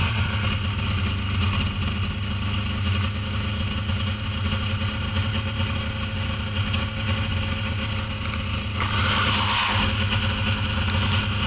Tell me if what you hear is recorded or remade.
recorded